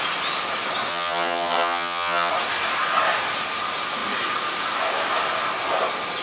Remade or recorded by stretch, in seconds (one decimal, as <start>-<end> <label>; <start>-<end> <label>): 0.0-0.9 recorded; 0.9-2.3 remade; 2.3-6.2 recorded